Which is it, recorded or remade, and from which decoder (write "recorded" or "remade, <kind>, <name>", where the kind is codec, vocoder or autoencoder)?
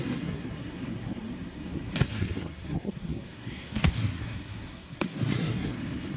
remade, codec, SNAC